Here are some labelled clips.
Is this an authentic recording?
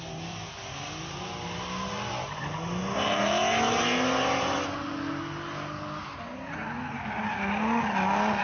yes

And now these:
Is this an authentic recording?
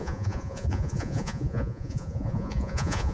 no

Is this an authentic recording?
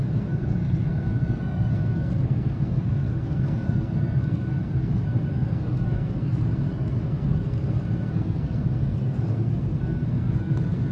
no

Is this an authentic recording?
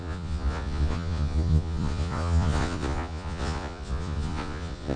no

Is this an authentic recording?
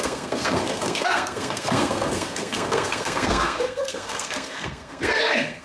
no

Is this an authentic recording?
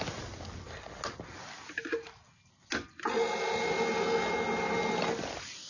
yes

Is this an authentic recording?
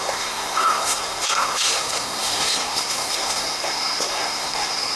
no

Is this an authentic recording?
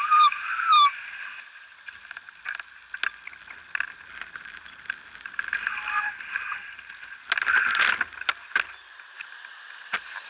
yes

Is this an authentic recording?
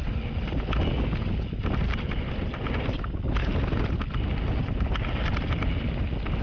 yes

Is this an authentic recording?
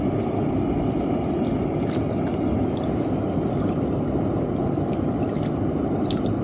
yes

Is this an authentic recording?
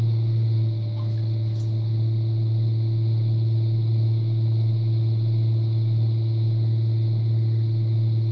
yes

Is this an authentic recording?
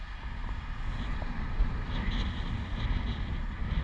yes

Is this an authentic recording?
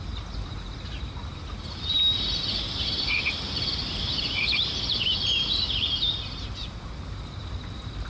no